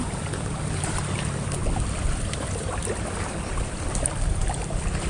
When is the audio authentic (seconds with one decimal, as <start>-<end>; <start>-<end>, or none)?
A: 0.0-5.1